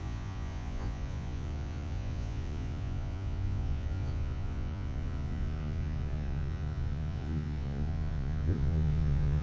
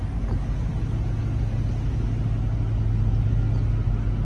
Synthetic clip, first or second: first